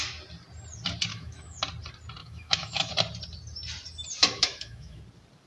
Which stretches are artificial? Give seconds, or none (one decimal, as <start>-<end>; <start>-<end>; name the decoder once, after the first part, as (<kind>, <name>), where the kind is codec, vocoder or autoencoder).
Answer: 1.1-1.6 (autoencoder, DAC-VAE); 2.2-2.9; 4.2-5.0